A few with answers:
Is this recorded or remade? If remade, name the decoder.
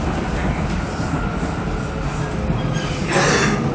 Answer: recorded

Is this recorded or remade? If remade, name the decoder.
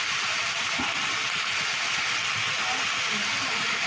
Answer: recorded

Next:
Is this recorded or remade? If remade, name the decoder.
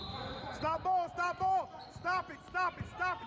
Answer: recorded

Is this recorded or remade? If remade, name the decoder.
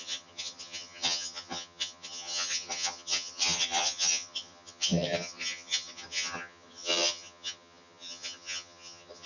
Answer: remade, vocoder, HiFi-GAN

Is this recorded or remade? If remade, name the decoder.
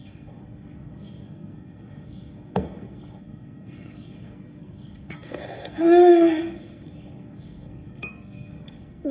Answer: remade, codec, SNAC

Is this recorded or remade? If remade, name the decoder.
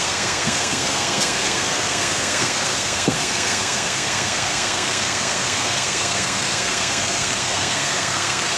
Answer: remade, codec, SNAC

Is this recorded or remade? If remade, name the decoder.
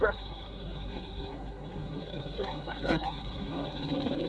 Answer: remade, codec, SNAC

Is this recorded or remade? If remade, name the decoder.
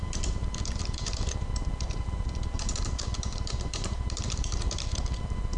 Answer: remade, vocoder, BigVGAN v2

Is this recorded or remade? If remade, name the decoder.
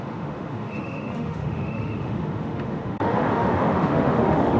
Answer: remade, autoencoder, DAC-VAE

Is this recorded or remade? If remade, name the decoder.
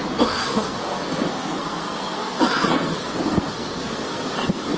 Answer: remade, codec, SNAC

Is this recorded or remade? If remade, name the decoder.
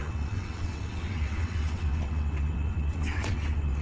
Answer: remade, vocoder, WaveNeXt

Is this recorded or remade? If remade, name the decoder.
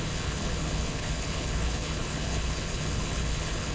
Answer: remade, codec, HILCodec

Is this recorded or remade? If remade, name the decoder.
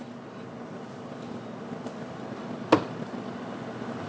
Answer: recorded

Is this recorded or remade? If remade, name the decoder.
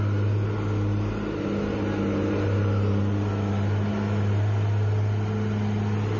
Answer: recorded